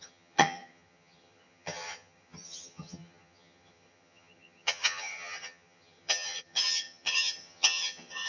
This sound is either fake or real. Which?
fake